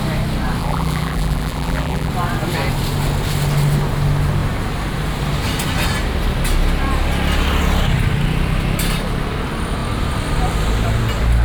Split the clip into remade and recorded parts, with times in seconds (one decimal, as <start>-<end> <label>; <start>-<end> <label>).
0.0-0.6 recorded; 0.6-2.1 remade; 2.1-11.4 recorded